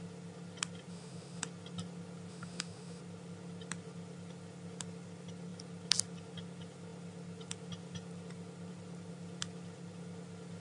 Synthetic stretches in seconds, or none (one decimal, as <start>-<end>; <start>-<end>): 0.9-1.4; 2.3-3.0